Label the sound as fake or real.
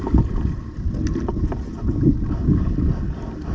real